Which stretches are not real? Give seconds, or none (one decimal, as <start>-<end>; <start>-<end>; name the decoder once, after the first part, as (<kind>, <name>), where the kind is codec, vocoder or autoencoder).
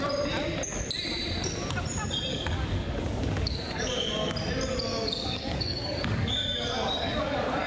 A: 2.3-4.3 (codec, DAC); 4.9-7.7